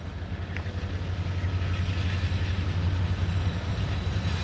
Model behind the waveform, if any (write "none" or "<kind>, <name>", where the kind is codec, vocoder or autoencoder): none